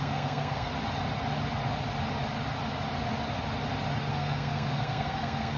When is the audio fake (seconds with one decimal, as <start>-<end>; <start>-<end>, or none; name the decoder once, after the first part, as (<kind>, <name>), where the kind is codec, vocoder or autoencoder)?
0.0-0.7 (codec, SNAC); 4.1-5.6